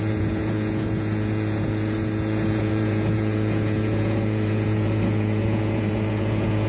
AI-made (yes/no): yes